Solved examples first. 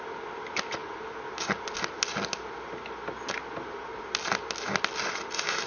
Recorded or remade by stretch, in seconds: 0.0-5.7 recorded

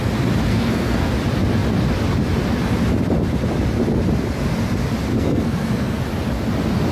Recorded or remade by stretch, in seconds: 0.0-0.5 recorded; 0.5-1.1 remade; 1.1-5.1 recorded; 5.1-6.0 remade; 6.0-6.9 recorded

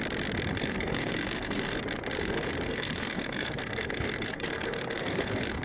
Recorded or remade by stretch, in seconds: 0.0-0.5 recorded; 0.5-1.8 remade; 1.8-2.2 recorded; 2.2-5.6 remade

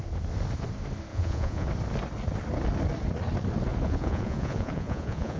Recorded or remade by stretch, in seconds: 0.0-1.1 recorded; 1.1-1.7 remade; 1.7-3.7 recorded; 3.7-5.4 remade

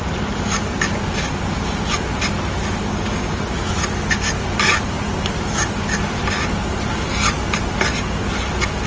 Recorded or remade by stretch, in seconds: 0.0-2.9 recorded; 2.9-3.4 remade; 3.4-8.9 recorded

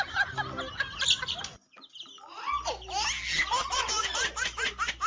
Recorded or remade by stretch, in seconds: 0.0-5.1 recorded

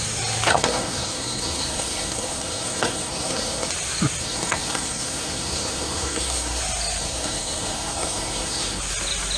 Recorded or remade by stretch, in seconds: 0.0-0.5 recorded; 0.5-3.7 remade; 3.7-4.2 recorded; 4.2-6.6 remade; 6.6-7.0 recorded; 7.0-8.8 remade; 8.8-9.4 recorded